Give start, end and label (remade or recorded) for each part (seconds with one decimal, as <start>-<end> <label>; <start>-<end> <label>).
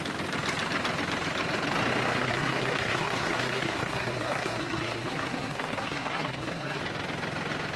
0.0-2.1 recorded; 2.1-6.8 remade; 6.8-7.8 recorded